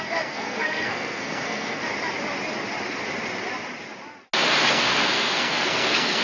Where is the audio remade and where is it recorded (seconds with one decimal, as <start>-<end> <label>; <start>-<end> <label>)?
0.0-1.8 remade; 1.8-4.7 recorded; 4.7-6.2 remade